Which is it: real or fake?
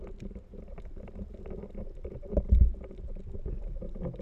real